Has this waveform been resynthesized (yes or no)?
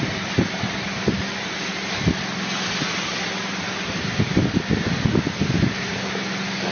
no